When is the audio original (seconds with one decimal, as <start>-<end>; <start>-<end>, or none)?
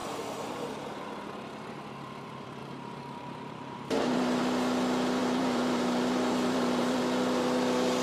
0.0-2.6; 4.4-5.2; 7.0-8.0